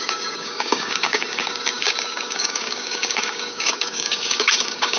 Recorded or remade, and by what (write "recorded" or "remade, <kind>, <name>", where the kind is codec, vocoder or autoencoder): remade, codec, DAC